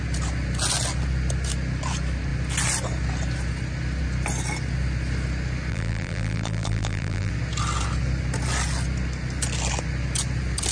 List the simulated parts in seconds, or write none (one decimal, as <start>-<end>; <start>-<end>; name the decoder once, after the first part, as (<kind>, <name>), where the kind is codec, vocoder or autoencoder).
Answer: 5.7-7.3 (vocoder, BigVGAN v2)